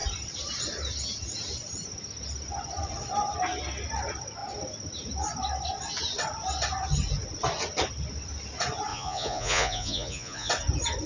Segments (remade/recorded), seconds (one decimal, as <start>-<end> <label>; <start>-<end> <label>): 0.0-8.9 recorded; 8.9-10.5 remade; 10.5-11.1 recorded